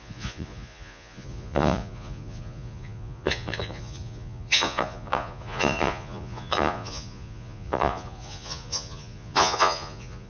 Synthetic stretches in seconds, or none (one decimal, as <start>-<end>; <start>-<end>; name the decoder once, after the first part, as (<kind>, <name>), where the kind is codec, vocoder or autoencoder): 0.0-10.3 (vocoder, Vocos)